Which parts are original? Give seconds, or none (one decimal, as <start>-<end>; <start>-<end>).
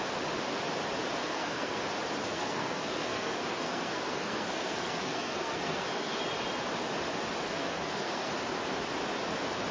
0.0-1.2; 1.8-2.2; 6.2-7.6; 8.3-9.7